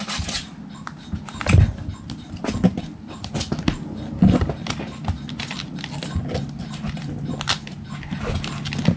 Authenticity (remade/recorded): recorded